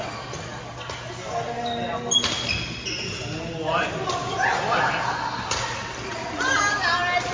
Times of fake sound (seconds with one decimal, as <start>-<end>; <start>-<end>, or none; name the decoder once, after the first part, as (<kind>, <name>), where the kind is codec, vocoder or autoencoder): none